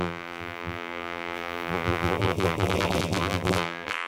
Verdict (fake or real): fake